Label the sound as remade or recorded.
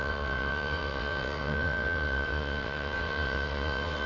remade